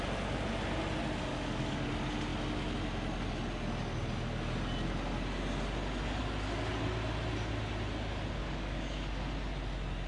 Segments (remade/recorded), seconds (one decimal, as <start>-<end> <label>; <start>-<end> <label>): 0.0-1.3 recorded; 1.3-1.9 remade; 1.9-8.4 recorded; 8.4-9.1 remade; 9.1-10.1 recorded